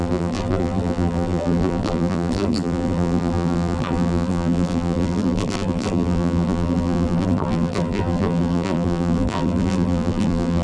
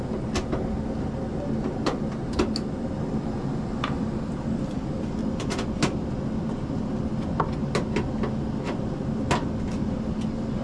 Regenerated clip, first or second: first